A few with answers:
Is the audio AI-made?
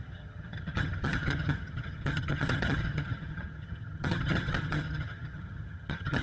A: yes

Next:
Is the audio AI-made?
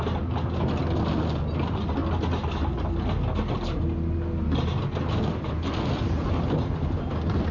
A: no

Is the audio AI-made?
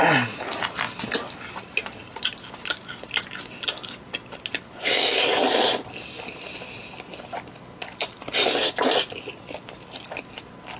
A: no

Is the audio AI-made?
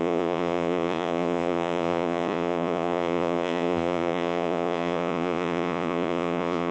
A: yes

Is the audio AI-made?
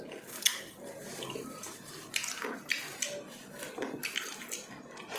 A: no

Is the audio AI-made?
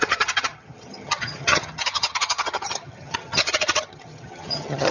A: yes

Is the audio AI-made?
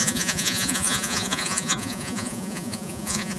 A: yes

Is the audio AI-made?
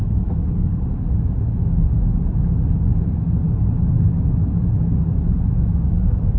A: no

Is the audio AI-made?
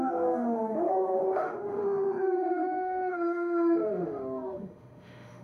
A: yes